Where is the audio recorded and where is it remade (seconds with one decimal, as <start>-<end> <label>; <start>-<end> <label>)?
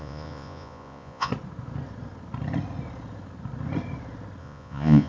0.0-1.3 remade; 1.3-4.4 recorded; 4.4-5.1 remade